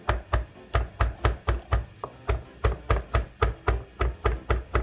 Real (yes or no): yes